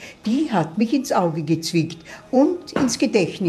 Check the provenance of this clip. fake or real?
fake